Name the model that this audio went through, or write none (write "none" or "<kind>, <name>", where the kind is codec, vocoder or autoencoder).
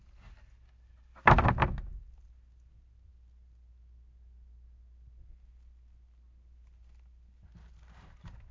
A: none